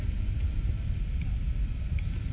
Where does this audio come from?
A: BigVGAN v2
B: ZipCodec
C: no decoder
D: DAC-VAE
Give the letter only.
C